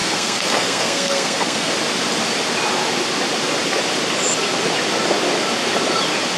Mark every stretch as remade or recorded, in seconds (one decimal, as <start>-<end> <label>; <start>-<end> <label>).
0.0-1.7 remade; 1.7-6.4 recorded